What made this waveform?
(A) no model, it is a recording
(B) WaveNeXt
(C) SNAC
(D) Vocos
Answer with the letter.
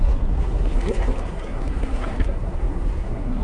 C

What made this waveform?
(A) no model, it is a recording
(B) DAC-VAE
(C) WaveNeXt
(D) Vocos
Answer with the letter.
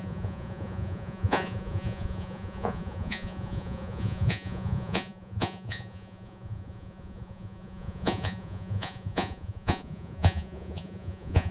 D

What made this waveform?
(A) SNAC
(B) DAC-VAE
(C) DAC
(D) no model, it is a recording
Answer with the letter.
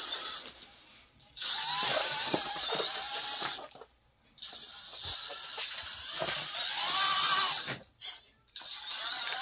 D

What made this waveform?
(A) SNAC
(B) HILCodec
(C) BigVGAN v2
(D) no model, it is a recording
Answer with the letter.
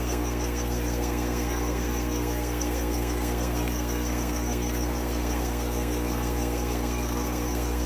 A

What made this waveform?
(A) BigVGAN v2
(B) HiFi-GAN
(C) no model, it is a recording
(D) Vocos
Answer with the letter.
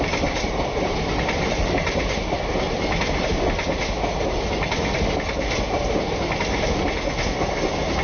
C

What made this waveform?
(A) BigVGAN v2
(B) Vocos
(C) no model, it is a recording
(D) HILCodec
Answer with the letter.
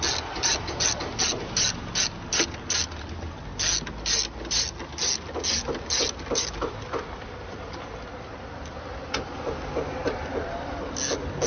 C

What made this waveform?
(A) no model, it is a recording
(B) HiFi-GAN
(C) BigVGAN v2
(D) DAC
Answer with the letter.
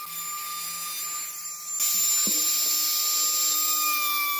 A